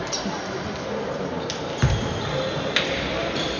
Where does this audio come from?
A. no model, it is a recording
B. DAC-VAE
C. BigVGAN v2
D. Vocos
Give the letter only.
A